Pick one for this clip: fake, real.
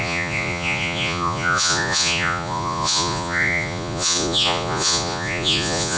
fake